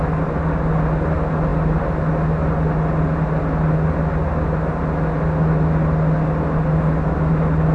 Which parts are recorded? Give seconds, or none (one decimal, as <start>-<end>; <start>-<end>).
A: 0.0-7.7

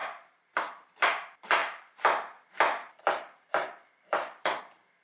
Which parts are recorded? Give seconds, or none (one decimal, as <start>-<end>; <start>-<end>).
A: 0.0-1.6; 4.6-5.0

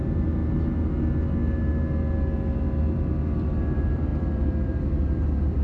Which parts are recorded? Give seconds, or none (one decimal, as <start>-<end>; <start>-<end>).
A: 0.4-3.6

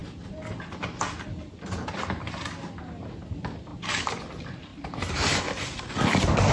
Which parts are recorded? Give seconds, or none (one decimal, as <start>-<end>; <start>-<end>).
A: 0.0-4.7; 5.4-6.5

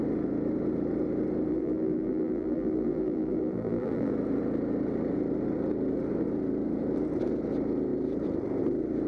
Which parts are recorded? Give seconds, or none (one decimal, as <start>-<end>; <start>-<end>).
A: 0.0-1.5; 4.1-9.1

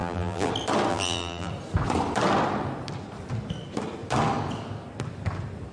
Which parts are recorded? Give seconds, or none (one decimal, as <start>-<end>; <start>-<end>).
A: 0.5-0.9; 1.5-5.7